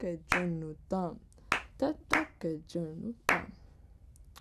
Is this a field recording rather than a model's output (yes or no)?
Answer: yes